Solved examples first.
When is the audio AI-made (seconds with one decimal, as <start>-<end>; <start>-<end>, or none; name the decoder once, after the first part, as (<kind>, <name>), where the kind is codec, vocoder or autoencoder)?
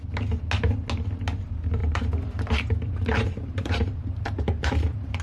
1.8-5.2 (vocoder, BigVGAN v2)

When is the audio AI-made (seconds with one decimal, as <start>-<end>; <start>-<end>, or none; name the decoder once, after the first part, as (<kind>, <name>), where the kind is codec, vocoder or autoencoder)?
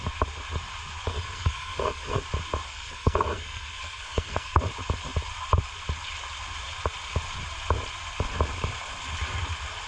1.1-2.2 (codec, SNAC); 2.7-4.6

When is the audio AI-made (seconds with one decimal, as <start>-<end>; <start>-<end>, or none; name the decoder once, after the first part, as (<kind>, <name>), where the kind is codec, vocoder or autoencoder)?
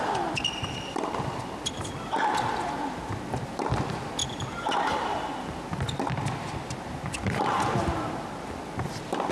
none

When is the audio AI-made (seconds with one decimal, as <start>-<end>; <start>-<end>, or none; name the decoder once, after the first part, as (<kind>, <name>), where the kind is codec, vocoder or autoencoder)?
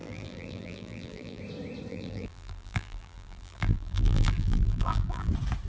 0.0-1.4 (vocoder, BigVGAN v2); 1.9-5.3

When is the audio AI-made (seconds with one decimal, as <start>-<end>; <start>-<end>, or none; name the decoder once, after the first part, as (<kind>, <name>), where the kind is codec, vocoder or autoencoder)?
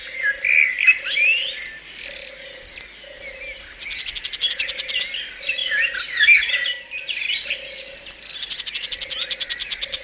none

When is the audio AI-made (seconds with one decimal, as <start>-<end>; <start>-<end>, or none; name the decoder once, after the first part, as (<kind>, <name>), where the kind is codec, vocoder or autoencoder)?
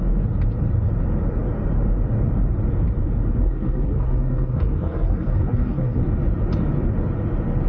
3.4-6.0 (codec, SNAC)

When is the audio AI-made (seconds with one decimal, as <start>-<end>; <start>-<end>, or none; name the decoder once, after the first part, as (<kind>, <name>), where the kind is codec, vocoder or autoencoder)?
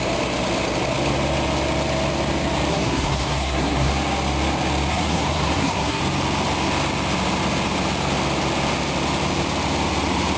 2.7-3.9 (codec, SNAC); 4.9-6.0